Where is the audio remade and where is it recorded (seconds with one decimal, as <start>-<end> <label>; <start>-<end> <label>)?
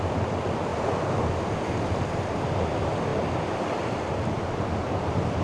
0.0-5.4 recorded